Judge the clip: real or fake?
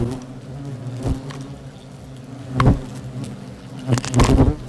real